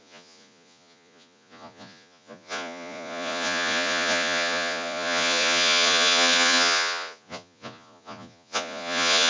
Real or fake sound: fake